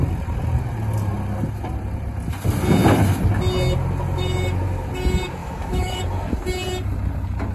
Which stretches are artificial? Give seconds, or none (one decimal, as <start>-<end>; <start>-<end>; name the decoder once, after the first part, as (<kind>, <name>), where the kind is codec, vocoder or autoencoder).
5.4-6.0 (autoencoder, DAC-VAE)